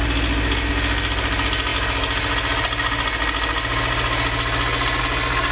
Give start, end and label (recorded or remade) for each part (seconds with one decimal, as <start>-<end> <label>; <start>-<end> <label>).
0.0-5.5 recorded